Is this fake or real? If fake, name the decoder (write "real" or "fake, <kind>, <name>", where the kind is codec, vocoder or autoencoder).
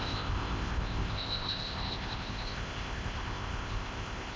fake, codec, ZipCodec